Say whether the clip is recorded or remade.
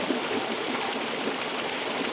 recorded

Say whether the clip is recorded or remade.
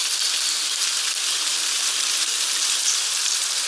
recorded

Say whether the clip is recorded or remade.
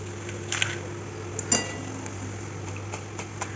recorded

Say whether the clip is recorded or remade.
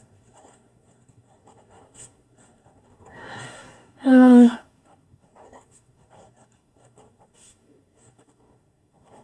remade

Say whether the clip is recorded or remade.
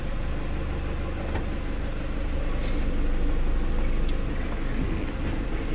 recorded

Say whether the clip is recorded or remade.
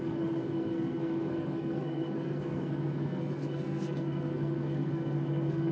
remade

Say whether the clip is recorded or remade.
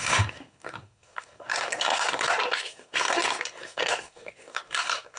remade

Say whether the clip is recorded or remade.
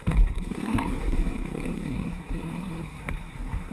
remade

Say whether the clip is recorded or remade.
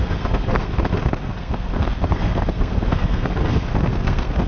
remade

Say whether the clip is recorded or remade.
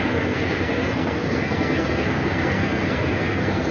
remade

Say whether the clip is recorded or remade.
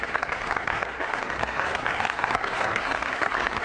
remade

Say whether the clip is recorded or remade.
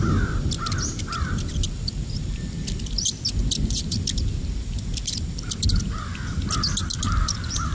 recorded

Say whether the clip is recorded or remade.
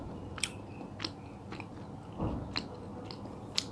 recorded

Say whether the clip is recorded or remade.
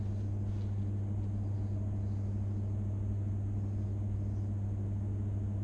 recorded